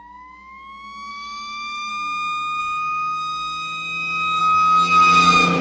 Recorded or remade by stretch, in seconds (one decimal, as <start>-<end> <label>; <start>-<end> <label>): 0.0-1.1 recorded; 1.1-1.9 remade; 1.9-2.6 recorded; 2.6-4.4 remade; 4.4-5.6 recorded